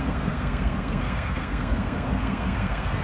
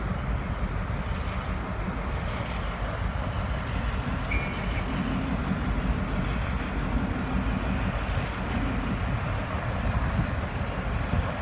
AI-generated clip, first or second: first